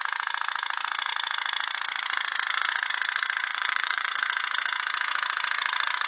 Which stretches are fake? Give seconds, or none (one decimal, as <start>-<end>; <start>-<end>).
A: 3.5-4.1